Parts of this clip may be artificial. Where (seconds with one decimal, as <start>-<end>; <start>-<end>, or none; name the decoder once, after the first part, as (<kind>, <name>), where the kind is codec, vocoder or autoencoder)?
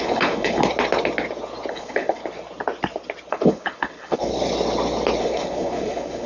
0.0-0.6 (codec, HILCodec); 1.7-2.2; 3.3-4.3; 5.2-6.3